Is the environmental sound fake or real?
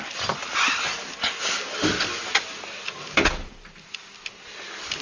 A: real